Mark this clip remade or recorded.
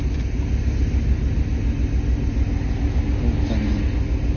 recorded